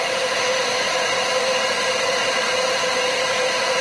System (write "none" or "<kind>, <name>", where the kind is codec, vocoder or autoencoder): vocoder, BigVGAN v2